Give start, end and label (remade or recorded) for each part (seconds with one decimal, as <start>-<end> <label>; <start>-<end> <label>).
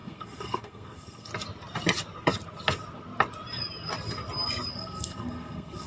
0.0-1.3 remade; 1.3-4.7 recorded; 4.7-5.9 remade